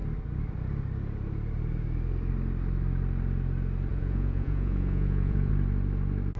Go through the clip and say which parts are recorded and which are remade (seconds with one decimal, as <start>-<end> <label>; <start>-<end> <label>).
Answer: 0.0-3.9 recorded; 3.9-5.5 remade; 5.5-6.4 recorded